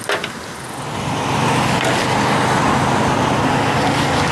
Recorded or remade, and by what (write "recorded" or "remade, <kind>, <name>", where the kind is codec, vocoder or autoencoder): recorded